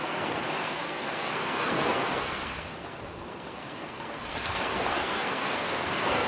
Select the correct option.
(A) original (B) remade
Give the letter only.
B